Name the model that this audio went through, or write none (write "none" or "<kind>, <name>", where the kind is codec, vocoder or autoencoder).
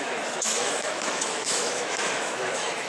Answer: autoencoder, DAC-VAE